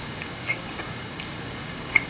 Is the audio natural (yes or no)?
no